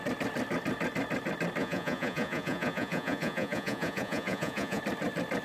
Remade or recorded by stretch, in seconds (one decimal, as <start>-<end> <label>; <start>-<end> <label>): 0.0-1.6 recorded; 1.6-4.8 remade; 4.8-5.4 recorded